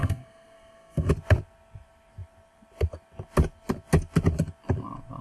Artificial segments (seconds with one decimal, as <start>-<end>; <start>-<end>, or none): 0.0-1.1